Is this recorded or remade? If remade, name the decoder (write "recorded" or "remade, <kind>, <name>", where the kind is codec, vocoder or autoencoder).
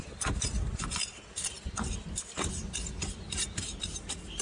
recorded